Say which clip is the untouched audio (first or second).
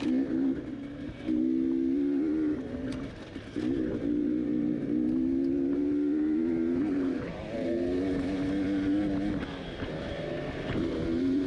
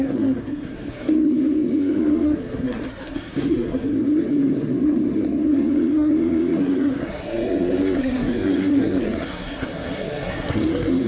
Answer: first